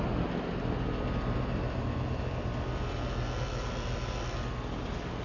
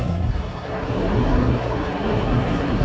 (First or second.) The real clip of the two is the first